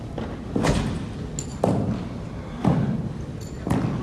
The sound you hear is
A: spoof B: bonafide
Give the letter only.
B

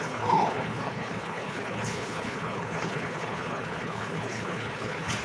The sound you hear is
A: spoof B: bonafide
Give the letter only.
A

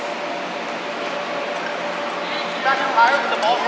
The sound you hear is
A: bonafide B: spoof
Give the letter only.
A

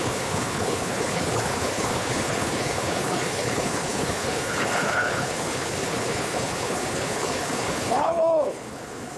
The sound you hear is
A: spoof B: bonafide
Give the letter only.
A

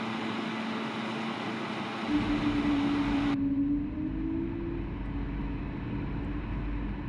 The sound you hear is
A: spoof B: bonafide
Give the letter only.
B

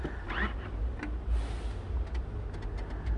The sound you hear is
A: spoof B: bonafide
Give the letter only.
B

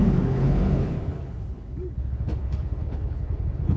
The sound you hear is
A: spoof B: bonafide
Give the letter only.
A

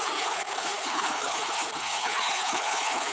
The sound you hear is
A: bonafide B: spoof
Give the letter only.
B